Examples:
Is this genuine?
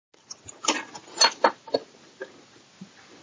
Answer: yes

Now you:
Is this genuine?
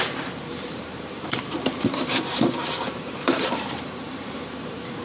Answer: no